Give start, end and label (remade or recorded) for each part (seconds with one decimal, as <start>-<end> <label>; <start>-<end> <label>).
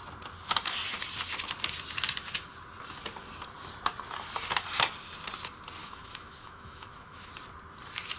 0.0-5.8 recorded; 5.8-7.3 remade; 7.3-8.2 recorded